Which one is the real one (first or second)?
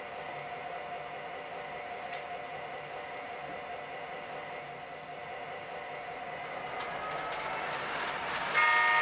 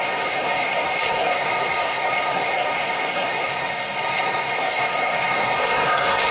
first